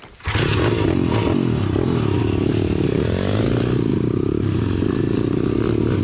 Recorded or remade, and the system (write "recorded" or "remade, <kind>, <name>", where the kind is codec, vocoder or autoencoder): recorded